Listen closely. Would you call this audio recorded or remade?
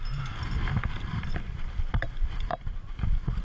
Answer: recorded